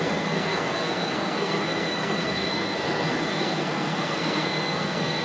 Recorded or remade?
remade